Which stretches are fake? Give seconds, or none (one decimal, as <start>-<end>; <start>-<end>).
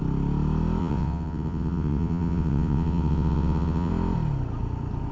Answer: 0.8-3.9